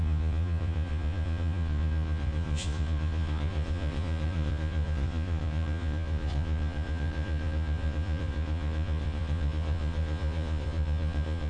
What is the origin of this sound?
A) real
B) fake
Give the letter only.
B